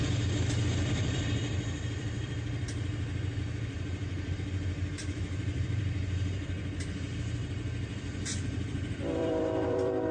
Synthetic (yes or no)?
yes